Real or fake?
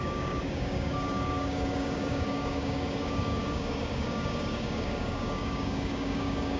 fake